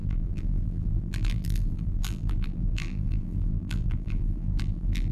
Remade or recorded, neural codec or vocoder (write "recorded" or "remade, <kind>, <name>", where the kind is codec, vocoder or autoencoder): remade, vocoder, BigVGAN v2